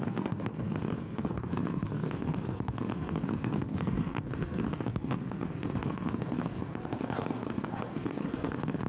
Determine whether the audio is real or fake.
fake